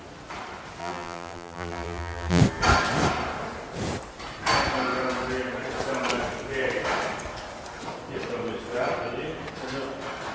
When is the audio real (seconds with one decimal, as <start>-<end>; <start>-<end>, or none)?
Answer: 0.0-0.8; 2.4-10.3

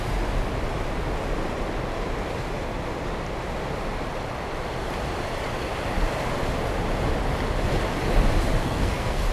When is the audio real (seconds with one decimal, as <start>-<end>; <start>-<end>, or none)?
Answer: 0.0-8.6

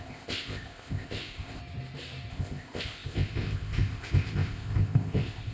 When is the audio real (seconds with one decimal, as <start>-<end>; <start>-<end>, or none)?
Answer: 1.6-2.3

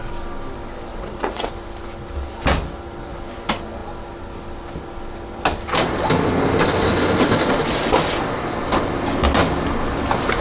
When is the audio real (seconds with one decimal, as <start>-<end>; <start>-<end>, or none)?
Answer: 0.0-0.9; 1.5-10.4

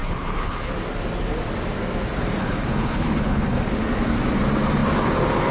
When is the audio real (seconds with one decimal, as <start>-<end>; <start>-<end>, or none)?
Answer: 0.7-2.4; 3.6-5.5

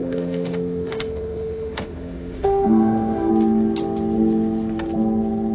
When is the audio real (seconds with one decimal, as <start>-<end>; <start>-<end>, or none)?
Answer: 3.3-5.5

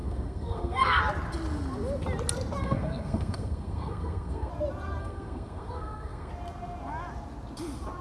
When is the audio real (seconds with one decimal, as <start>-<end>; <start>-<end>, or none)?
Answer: 1.0-2.6; 4.5-5.0; 6.3-8.0

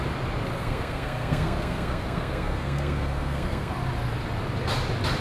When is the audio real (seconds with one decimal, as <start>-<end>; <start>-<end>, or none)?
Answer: 0.0-0.6; 3.7-5.2